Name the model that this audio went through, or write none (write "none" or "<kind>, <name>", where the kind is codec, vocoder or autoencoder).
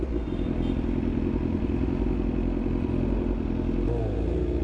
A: none